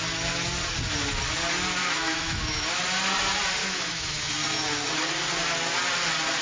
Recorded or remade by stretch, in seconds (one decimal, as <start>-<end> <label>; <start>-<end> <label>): 0.0-1.8 recorded; 1.8-2.8 remade; 2.8-3.6 recorded; 3.6-4.3 remade; 4.3-6.4 recorded